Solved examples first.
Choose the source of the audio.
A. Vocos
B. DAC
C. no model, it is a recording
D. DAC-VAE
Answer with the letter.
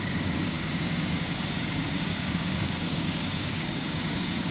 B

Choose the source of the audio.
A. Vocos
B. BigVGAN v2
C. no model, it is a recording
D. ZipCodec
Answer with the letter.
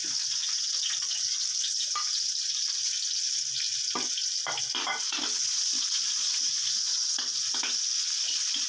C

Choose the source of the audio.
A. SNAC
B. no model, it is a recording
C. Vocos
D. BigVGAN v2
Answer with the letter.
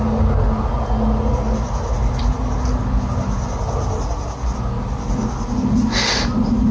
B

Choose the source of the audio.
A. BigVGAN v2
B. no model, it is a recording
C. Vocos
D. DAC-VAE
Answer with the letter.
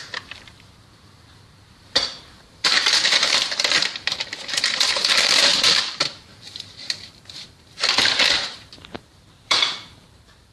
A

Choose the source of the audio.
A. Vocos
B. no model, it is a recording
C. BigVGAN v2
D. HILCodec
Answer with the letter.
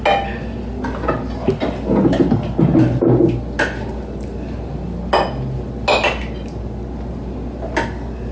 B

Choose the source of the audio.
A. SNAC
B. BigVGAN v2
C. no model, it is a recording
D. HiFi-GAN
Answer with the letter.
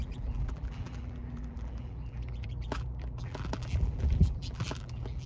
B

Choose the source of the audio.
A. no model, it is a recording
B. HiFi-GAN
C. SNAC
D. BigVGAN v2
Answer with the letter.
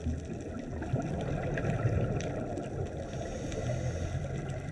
A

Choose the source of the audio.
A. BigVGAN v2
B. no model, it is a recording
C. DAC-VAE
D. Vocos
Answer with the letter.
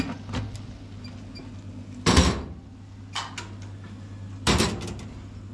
B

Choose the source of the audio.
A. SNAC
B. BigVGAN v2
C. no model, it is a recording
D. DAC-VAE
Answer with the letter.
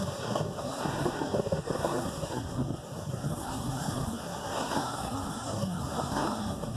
A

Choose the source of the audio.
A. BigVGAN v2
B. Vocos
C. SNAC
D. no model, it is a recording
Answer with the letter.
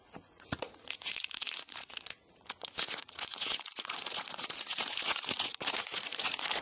B